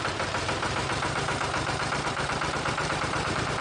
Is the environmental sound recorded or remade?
remade